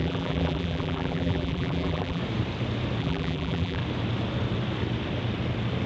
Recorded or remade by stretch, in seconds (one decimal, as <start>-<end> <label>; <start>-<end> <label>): 0.0-2.2 remade; 2.2-3.0 recorded; 3.0-3.8 remade; 3.8-5.9 recorded